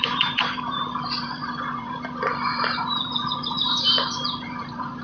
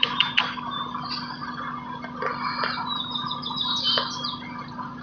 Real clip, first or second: second